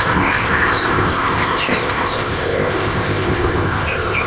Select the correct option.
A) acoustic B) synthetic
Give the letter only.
B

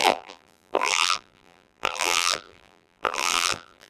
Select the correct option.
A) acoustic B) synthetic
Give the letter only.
B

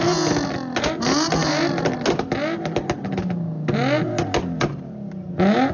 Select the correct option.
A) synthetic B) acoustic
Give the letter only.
B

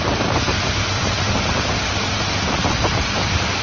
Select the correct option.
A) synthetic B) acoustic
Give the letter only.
B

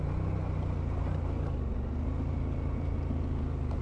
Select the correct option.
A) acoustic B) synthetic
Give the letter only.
A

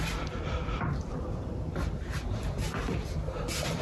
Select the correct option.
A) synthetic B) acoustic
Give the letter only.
A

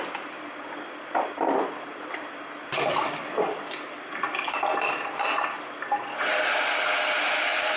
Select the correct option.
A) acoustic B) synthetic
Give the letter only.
B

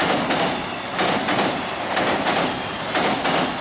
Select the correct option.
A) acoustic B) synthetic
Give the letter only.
A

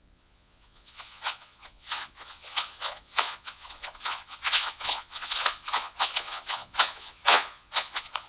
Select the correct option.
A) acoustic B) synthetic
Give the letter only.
B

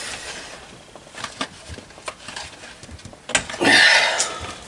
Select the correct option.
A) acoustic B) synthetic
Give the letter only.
A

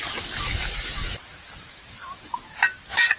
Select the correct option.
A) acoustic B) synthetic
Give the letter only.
A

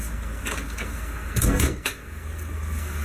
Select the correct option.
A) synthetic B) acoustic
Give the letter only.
A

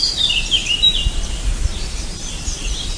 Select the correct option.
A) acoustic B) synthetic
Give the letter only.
A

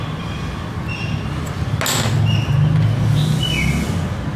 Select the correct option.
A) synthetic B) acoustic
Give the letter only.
B